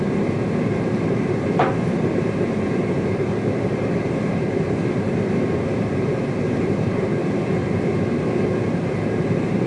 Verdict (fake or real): fake